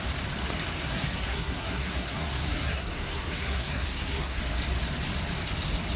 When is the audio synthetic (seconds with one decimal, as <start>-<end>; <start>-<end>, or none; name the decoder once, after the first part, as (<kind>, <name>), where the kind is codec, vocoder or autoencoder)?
0.8-4.4 (codec, SNAC)